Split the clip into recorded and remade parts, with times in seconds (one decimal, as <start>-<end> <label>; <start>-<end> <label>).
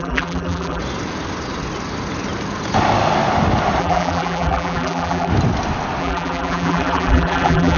0.0-0.8 remade; 0.8-3.8 recorded; 3.8-5.3 remade; 5.3-6.0 recorded; 6.0-7.8 remade